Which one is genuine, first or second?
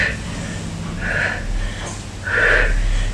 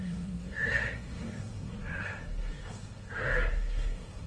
first